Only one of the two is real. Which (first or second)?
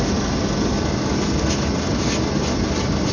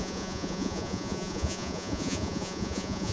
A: first